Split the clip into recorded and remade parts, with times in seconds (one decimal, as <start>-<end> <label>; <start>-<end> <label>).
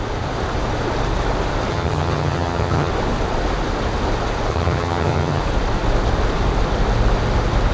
0.0-1.7 recorded; 1.7-2.9 remade; 2.9-4.5 recorded; 4.5-5.4 remade; 5.4-7.7 recorded